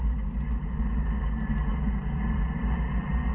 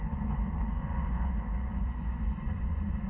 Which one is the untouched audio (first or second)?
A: first